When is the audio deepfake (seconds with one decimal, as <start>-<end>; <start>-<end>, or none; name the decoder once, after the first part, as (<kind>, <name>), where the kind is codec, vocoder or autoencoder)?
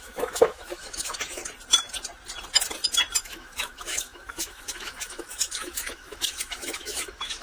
0.0-1.4 (autoencoder, DAC-VAE); 3.2-7.4